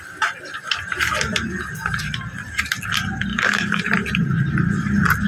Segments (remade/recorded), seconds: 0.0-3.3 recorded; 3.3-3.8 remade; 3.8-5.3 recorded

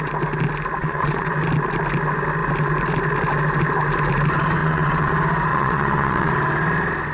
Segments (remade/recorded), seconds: 0.0-0.8 recorded; 0.8-1.3 remade; 1.3-4.6 recorded; 4.6-5.1 remade; 5.1-5.5 recorded; 5.5-6.3 remade; 6.3-7.1 recorded

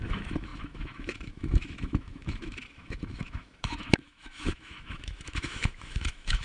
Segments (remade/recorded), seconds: 0.0-6.4 remade

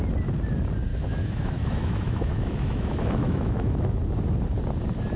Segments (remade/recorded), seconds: 0.0-0.9 recorded; 0.9-4.0 remade; 4.0-5.2 recorded